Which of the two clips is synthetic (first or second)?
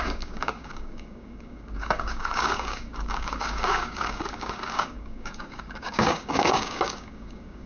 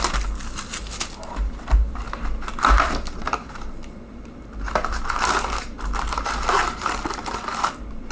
first